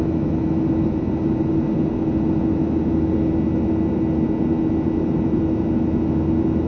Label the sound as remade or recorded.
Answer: recorded